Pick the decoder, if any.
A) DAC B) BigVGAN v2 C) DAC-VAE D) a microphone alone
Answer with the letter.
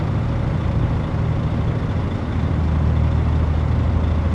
D